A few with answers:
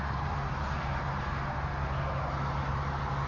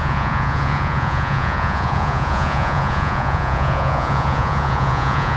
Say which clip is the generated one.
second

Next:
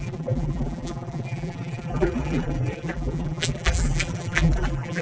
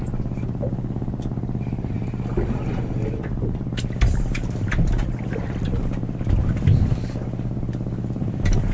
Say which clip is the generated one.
first